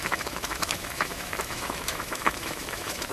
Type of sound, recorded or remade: remade